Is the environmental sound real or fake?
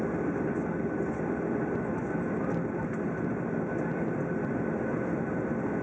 real